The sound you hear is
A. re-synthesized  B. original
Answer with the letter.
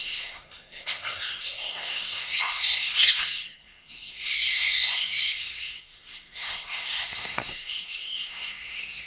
A